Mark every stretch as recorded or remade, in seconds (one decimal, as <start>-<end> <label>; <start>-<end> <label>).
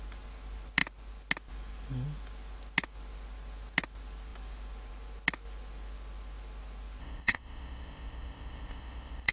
0.0-7.0 recorded; 7.0-9.3 remade